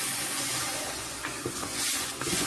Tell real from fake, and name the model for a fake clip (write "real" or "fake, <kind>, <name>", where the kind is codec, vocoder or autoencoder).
fake, vocoder, Vocos